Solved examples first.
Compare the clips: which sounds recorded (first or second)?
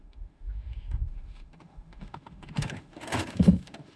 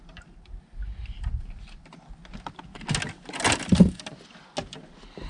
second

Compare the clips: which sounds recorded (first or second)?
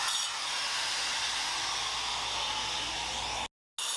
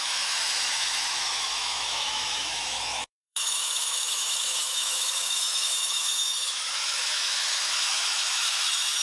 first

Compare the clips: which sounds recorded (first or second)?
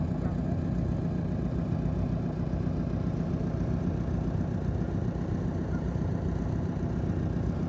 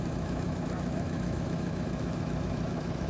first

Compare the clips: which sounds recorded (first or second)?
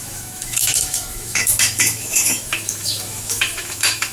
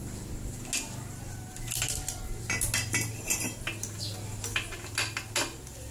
second